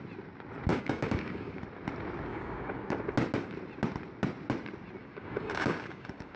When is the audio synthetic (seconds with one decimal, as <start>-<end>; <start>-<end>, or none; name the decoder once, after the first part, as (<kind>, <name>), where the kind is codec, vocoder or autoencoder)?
0.7-1.6 (codec, DAC); 2.3-3.0; 5.0-6.4

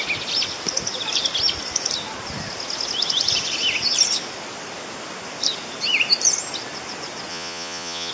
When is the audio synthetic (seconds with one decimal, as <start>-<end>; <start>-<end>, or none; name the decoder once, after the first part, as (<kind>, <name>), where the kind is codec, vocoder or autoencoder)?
7.3-8.1 (vocoder, Vocos)

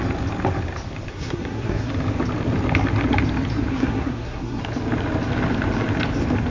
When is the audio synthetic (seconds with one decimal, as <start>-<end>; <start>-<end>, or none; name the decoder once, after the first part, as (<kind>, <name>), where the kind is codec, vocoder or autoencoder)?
1.1-1.9 (codec, SNAC); 3.7-4.6

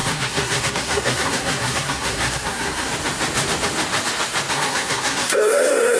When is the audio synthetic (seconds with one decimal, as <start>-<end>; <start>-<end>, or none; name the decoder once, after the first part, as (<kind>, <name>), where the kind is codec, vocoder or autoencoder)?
0.0-2.9 (codec, SNAC); 4.5-6.0

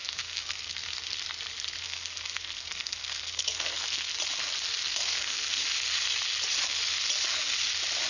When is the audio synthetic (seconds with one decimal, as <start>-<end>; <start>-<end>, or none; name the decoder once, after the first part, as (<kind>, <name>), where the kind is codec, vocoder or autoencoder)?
0.0-0.8 (codec, SNAC); 1.8-4.1; 4.9-5.6

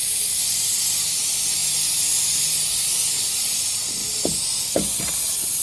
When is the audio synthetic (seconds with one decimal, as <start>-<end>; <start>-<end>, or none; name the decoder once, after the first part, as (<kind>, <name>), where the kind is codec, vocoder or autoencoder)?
none